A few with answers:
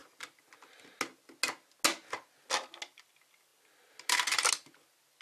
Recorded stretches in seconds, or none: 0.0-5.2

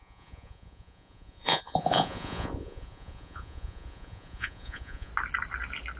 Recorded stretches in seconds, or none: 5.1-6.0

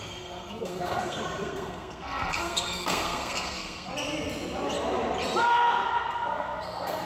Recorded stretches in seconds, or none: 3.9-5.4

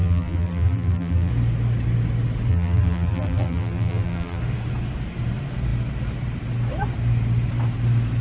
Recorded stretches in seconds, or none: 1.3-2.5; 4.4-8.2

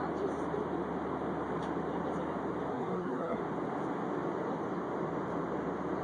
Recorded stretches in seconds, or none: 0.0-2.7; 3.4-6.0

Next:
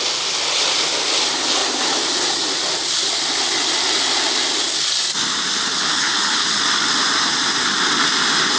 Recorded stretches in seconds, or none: 0.0-5.7; 6.6-8.6

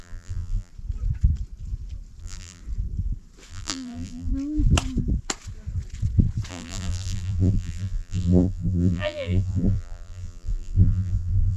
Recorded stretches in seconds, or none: 0.7-2.2; 2.6-3.5; 4.3-6.5